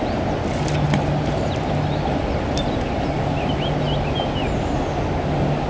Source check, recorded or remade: recorded